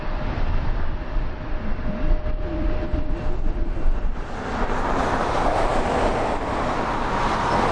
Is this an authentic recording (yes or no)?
yes